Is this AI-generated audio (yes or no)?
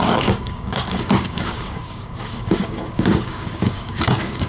yes